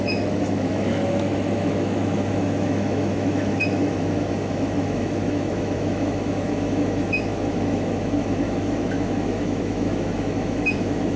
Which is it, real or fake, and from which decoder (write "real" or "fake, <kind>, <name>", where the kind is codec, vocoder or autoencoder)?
fake, autoencoder, DAC-VAE